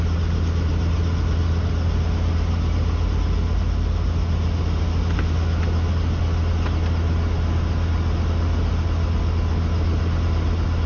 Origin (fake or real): real